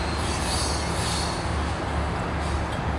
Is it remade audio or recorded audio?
recorded